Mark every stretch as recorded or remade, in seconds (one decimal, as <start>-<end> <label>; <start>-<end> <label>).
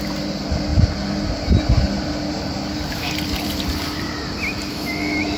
0.0-4.7 recorded; 4.7-5.4 remade